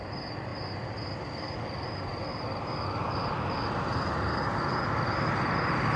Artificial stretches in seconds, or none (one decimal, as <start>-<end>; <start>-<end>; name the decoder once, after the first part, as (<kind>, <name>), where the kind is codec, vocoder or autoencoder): 0.0-0.5 (vocoder, BigVGAN v2); 4.1-6.0